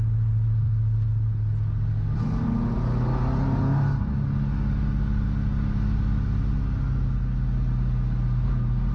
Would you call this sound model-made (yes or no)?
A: no